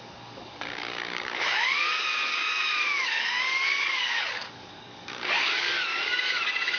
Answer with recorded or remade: remade